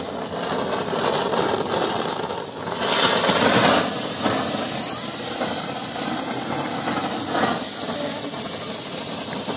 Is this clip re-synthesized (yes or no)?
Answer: no